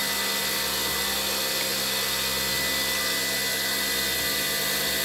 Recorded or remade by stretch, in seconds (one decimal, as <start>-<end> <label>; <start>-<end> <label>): 0.0-5.0 recorded